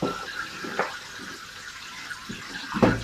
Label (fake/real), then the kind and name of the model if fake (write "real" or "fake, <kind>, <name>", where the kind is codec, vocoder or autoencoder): real